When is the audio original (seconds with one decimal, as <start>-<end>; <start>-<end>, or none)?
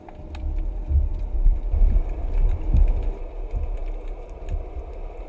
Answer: 0.0-1.1; 2.6-5.3